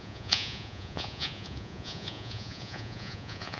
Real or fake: fake